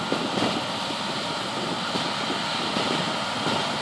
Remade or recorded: recorded